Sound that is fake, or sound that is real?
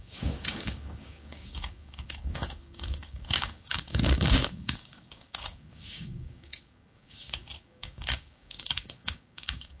fake